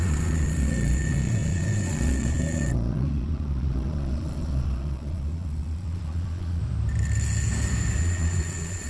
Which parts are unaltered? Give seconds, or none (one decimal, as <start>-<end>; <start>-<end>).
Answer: 6.6-8.0